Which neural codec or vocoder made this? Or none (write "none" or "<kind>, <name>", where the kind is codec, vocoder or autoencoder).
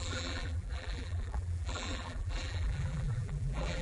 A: vocoder, BigVGAN v2